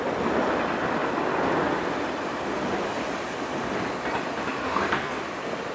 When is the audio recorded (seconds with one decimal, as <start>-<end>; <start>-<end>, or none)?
0.0-4.6; 5.2-5.7